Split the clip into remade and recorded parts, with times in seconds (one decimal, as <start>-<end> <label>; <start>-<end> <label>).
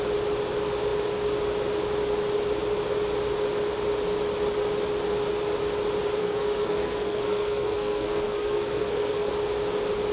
0.0-6.2 recorded; 6.2-9.3 remade; 9.3-10.1 recorded